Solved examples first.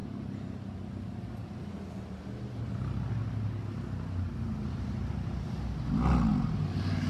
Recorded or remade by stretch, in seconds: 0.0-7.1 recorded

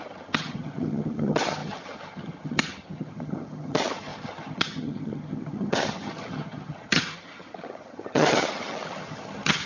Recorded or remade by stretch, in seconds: 0.0-9.7 remade